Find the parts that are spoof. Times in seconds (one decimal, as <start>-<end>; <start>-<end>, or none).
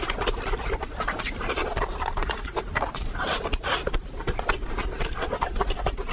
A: none